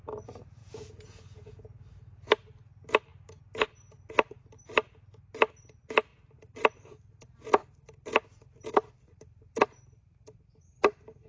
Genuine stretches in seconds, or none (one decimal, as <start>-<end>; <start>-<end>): 0.0-0.6; 1.6-11.3